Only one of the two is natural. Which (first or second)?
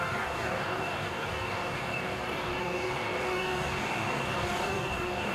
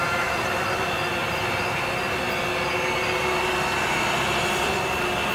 second